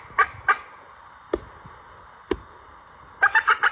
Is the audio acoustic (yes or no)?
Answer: yes